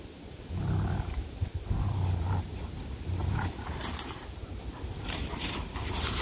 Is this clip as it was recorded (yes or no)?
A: yes